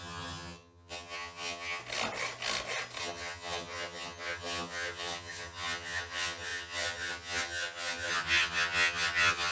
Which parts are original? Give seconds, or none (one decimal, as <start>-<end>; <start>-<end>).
1.8-3.0